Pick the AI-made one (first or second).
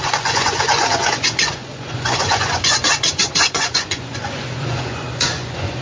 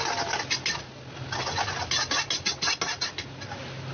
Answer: first